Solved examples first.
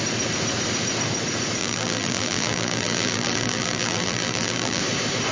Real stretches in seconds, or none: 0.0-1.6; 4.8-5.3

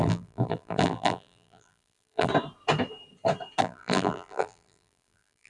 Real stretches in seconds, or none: 2.3-3.6

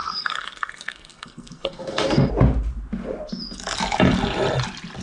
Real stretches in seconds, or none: 2.3-5.0

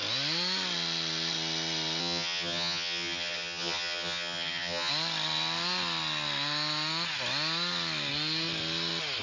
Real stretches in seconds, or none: 0.0-2.0; 4.9-9.2